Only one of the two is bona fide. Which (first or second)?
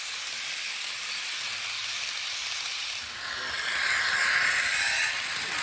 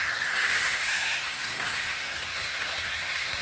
first